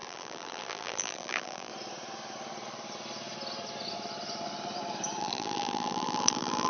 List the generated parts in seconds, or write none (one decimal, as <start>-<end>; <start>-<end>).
0.0-1.7; 5.2-6.7